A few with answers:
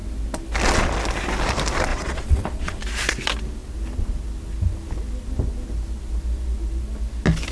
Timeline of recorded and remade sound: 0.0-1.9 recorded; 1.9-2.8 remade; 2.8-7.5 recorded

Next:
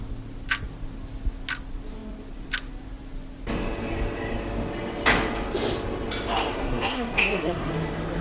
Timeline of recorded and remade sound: 0.0-6.5 recorded; 6.5-7.7 remade; 7.7-8.2 recorded

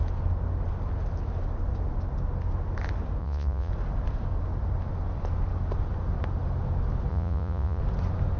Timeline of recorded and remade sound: 0.0-3.2 recorded; 3.2-3.7 remade; 3.7-7.1 recorded; 7.1-7.8 remade; 7.8-8.4 recorded

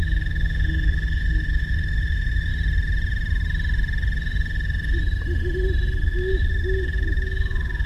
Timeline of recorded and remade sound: 0.0-2.5 remade; 2.5-6.3 recorded; 6.3-7.9 remade

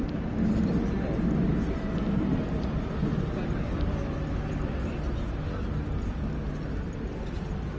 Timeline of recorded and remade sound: 0.0-7.8 recorded